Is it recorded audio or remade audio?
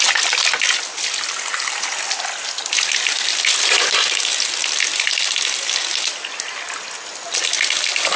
recorded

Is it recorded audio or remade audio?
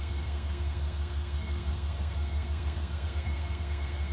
remade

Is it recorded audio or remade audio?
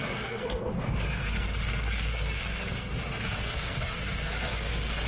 remade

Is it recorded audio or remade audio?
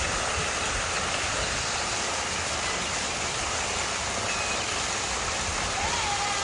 recorded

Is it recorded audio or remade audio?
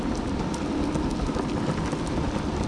recorded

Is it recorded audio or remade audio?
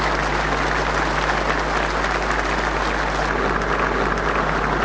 recorded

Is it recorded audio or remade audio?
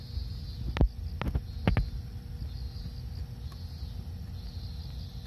recorded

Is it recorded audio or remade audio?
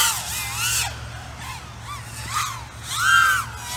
recorded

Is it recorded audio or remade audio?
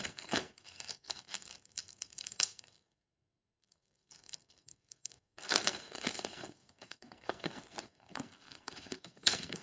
remade